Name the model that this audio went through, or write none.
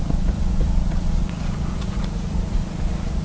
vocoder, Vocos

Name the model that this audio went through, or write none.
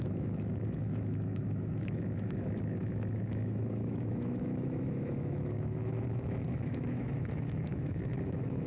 autoencoder, DAC-VAE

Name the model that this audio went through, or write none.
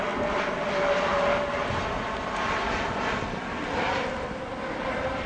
none